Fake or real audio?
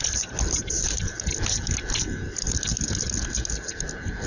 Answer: real